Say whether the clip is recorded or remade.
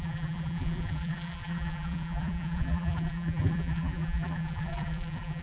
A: remade